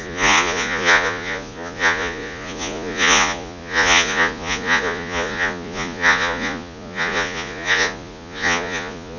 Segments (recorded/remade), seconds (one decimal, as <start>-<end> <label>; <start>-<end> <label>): 0.0-9.2 remade